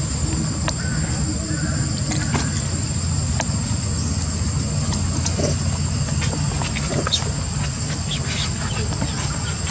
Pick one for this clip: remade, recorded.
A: recorded